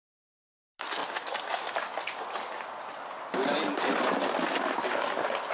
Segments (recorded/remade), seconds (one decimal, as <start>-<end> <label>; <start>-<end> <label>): 0.0-5.5 recorded